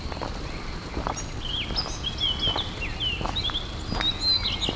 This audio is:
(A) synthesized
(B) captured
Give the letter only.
B